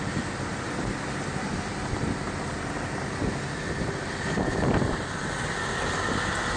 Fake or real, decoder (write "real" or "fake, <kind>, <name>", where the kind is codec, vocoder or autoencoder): real